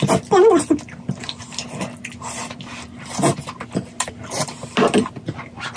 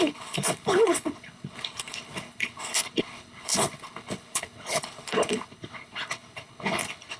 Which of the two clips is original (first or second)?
first